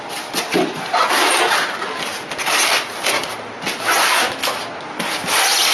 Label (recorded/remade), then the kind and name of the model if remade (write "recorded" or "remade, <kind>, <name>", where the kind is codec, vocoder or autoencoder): recorded